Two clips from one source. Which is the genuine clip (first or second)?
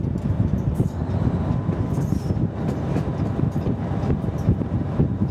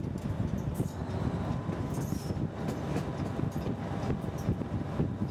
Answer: second